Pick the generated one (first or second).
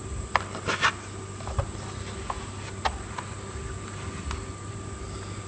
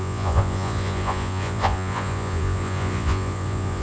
second